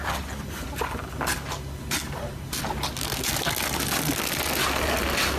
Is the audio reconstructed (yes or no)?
no